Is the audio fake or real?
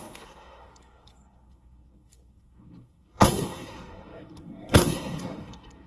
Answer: fake